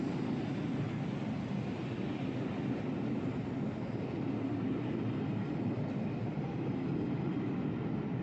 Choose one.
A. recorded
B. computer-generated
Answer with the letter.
A